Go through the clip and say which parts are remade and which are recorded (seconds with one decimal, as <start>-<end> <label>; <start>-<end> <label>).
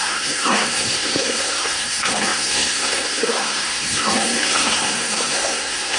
0.0-6.0 remade